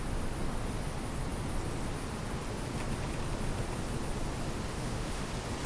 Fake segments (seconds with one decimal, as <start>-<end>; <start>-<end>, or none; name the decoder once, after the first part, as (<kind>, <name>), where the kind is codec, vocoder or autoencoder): 4.7-5.3 (autoencoder, DAC-VAE)